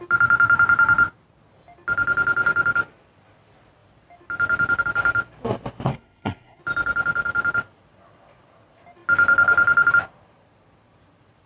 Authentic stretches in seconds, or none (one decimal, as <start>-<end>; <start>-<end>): 0.0-5.9; 6.6-11.5